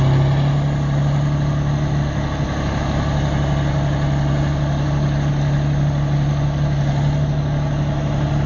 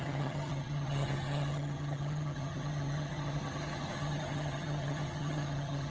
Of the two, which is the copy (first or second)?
second